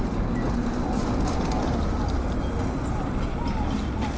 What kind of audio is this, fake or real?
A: real